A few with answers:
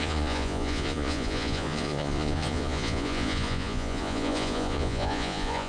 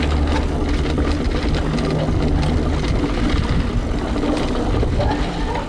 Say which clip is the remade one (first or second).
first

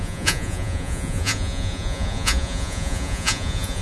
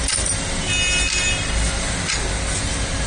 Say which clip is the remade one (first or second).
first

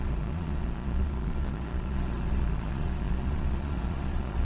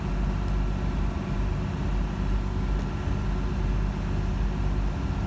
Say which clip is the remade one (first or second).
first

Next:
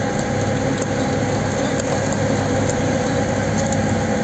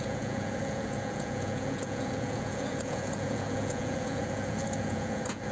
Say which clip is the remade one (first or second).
second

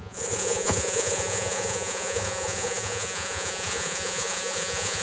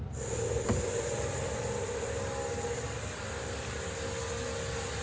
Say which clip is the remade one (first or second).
first